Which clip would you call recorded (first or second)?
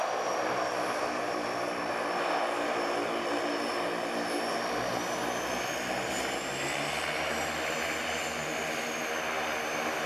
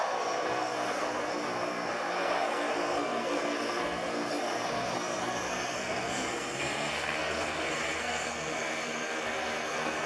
first